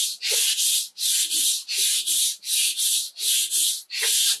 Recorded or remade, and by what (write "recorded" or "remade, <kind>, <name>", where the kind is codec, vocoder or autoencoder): recorded